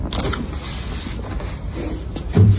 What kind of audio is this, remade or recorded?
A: recorded